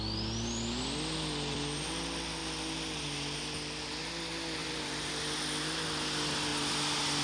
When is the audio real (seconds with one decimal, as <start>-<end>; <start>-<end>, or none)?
0.0-4.6; 5.1-7.2